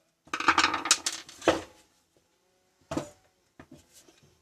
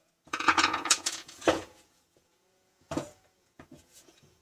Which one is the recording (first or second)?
first